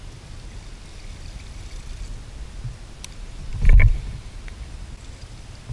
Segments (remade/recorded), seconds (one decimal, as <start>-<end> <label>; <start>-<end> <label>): 0.0-5.7 recorded